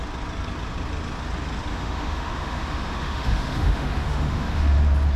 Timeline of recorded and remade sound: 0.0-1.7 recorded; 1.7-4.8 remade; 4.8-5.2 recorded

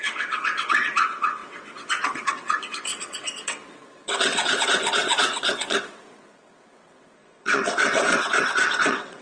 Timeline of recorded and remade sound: 0.0-9.2 remade

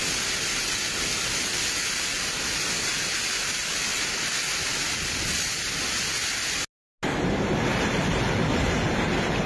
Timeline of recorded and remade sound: 0.0-9.5 recorded

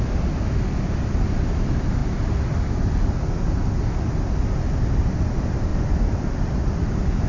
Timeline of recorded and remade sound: 0.0-5.7 recorded; 5.7-6.3 remade; 6.3-7.3 recorded